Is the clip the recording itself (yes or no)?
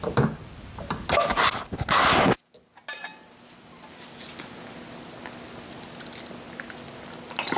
yes